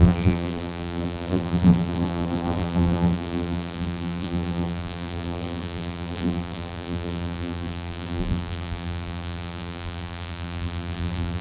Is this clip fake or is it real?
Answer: fake